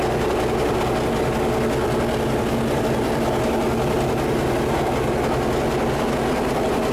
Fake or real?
real